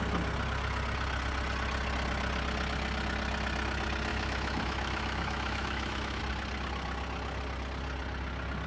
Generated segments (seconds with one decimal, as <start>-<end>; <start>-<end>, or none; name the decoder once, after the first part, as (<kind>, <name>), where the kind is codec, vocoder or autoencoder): 4.1-6.2 (autoencoder, DAC-VAE)